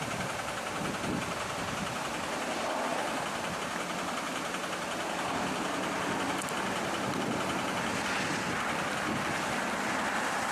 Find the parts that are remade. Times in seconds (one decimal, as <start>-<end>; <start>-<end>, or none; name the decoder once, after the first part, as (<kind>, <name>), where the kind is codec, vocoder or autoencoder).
2.9-3.6 (vocoder, BigVGAN v2)